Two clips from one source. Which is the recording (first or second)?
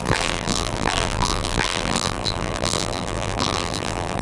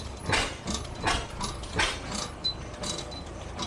second